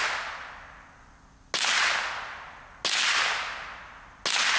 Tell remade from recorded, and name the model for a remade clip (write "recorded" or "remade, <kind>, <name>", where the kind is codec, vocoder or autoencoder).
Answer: recorded